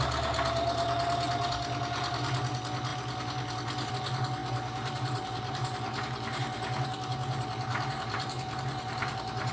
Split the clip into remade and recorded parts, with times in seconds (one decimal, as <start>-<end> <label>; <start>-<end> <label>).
0.0-4.4 recorded; 4.4-9.5 remade